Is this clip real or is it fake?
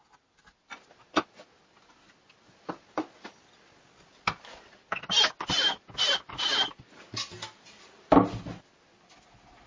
real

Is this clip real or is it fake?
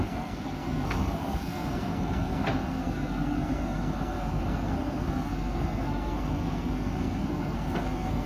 fake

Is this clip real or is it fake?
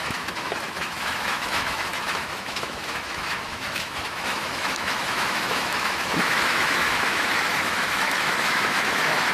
fake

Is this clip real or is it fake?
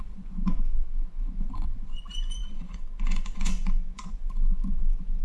fake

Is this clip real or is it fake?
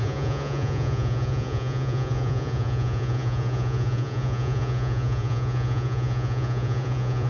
fake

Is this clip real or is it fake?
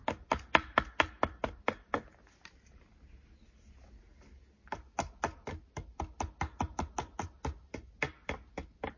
real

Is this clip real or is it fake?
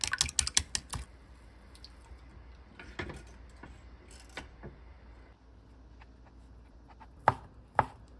real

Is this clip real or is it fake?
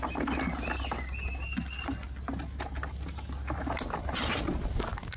real